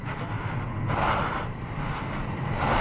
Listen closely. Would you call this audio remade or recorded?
recorded